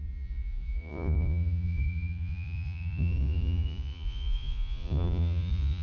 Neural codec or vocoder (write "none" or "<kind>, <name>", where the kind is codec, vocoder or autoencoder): vocoder, Vocos